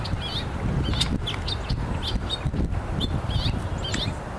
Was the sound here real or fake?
real